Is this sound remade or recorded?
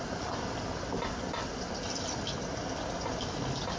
recorded